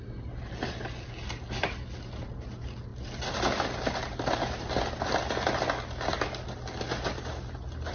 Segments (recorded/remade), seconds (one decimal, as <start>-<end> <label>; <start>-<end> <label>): 0.0-7.9 recorded